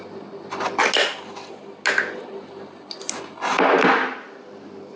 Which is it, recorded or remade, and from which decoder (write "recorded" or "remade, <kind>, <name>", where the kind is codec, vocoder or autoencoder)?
recorded